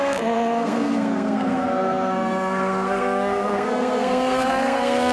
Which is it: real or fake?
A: fake